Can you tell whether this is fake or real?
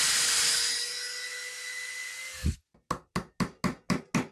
real